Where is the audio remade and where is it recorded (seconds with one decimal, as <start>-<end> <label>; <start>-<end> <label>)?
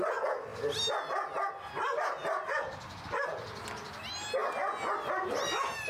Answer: 0.0-5.9 recorded